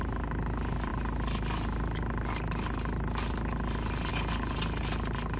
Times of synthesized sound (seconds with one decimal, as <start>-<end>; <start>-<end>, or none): none